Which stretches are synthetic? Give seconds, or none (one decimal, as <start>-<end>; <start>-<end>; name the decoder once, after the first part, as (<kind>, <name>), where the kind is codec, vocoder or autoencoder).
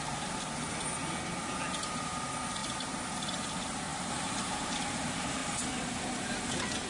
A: 0.0-1.0 (vocoder, BigVGAN v2); 1.8-5.4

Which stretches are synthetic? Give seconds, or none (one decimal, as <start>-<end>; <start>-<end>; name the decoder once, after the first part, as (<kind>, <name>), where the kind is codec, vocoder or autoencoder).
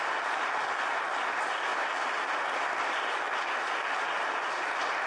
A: 1.7-3.3 (vocoder, BigVGAN v2)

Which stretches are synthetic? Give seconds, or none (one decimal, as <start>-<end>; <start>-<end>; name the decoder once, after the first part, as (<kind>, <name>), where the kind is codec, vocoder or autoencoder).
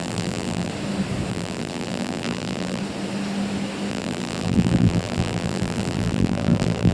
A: 0.0-0.7 (vocoder, BigVGAN v2); 1.3-2.8; 3.9-6.9